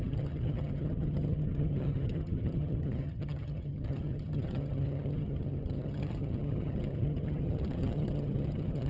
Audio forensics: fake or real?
fake